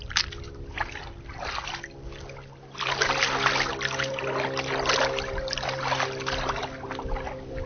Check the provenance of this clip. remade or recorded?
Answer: recorded